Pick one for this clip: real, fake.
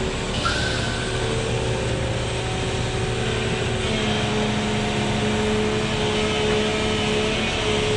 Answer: real